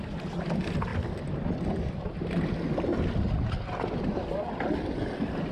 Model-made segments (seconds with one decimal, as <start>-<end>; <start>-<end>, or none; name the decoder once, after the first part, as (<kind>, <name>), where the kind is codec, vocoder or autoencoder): none